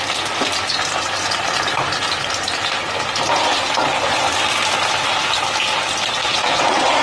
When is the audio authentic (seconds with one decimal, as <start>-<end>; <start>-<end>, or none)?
0.0-6.2

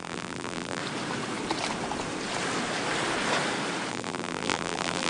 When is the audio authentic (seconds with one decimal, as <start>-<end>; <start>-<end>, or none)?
0.8-3.9

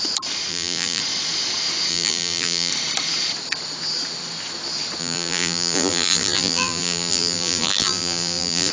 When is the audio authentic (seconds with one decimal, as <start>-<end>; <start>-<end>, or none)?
0.0-0.5; 1.0-1.9; 2.7-5.0